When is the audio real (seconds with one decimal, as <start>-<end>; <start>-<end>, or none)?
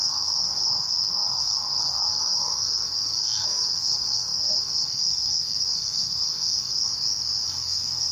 6.9-7.5